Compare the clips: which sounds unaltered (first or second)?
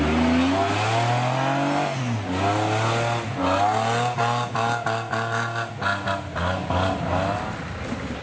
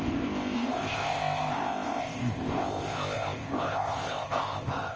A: first